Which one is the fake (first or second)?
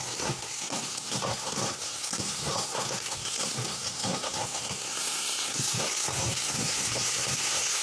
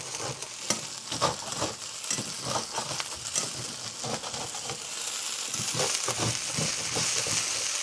first